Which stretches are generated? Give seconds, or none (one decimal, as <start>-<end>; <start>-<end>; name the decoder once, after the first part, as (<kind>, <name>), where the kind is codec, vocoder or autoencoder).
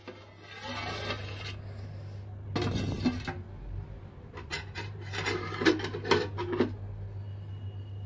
4.5-5.7 (vocoder, BigVGAN v2)